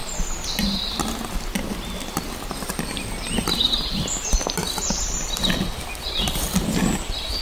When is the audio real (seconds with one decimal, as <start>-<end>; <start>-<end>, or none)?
0.0-7.4